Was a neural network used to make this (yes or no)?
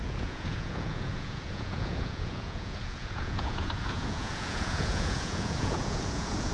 yes